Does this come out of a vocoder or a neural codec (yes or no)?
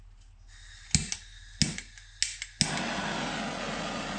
no